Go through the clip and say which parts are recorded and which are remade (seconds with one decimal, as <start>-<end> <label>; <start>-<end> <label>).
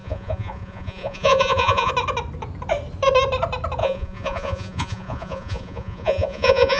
0.0-1.9 remade; 1.9-3.8 recorded; 3.8-6.8 remade